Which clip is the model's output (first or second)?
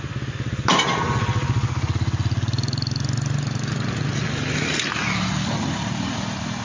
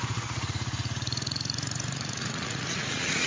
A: second